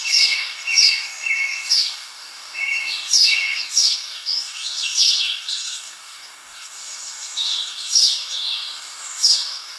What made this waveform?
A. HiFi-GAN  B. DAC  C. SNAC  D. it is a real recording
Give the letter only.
B